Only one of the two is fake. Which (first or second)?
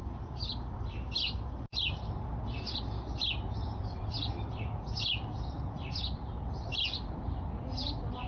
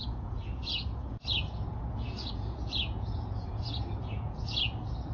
second